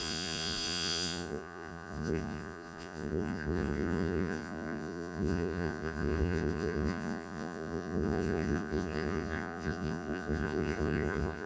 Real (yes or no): no